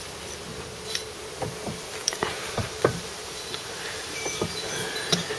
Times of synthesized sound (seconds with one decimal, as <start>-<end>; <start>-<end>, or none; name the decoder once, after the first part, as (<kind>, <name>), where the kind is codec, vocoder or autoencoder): 0.5-1.2 (vocoder, BigVGAN v2); 2.0-4.7